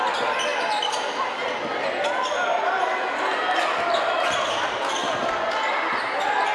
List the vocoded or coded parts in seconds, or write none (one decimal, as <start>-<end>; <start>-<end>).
none